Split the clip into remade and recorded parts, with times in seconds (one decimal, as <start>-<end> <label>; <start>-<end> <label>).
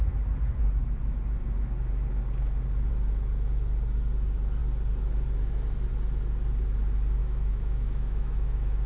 0.0-7.2 recorded; 7.2-8.9 remade